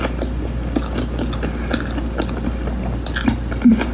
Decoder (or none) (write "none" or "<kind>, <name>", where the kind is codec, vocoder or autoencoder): none